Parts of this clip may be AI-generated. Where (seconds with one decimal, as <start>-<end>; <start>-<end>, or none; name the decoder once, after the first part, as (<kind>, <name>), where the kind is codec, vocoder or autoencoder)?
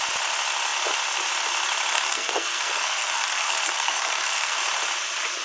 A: 1.9-4.6 (codec, SNAC)